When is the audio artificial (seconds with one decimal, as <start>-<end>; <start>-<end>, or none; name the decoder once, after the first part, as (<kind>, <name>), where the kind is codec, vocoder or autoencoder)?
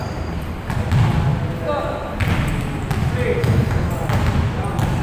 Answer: 3.4-3.9 (codec, DAC)